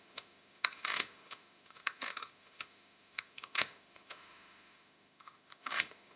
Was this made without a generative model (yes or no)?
no